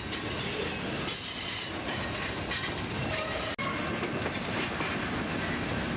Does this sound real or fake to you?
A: real